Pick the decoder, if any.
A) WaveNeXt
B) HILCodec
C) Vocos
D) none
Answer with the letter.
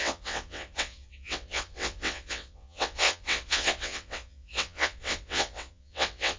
A